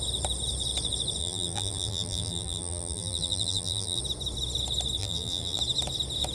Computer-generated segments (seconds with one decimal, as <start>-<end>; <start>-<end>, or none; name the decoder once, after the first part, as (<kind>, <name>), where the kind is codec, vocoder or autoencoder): 1.2-4.0 (vocoder, BigVGAN v2); 5.0-5.6